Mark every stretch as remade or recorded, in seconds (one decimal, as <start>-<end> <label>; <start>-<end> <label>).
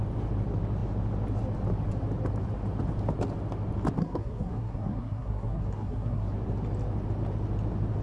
0.0-4.0 recorded; 4.0-6.3 remade; 6.3-8.0 recorded